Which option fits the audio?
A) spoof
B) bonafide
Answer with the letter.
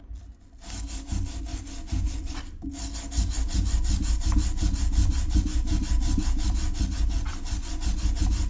B